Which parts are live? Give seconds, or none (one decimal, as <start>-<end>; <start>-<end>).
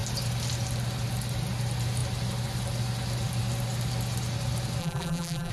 0.0-4.8